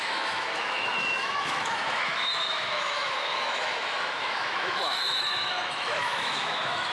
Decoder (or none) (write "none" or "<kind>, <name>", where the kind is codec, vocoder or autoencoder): autoencoder, DAC-VAE